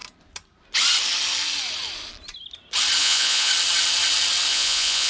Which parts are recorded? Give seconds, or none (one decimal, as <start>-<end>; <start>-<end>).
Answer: 0.0-3.0; 3.5-4.5